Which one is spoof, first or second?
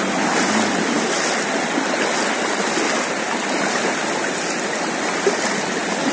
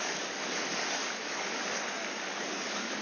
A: second